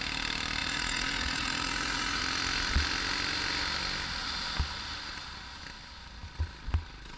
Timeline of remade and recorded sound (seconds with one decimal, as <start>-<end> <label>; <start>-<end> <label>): 0.0-0.6 recorded; 0.6-2.2 remade; 2.2-7.2 recorded